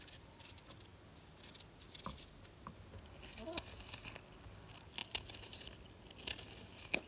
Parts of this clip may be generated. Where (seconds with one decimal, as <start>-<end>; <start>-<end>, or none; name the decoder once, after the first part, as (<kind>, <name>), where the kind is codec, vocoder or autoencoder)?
none